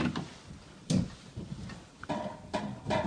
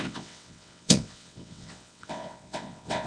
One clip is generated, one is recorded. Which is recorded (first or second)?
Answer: first